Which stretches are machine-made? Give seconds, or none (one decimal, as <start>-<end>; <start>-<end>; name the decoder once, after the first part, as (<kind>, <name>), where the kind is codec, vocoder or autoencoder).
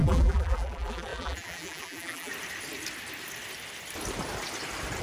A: 0.0-2.3 (vocoder, BigVGAN v2)